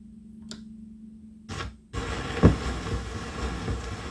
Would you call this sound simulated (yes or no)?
no